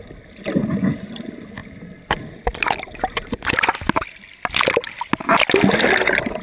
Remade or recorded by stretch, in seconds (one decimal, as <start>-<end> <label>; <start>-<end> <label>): 0.0-6.4 recorded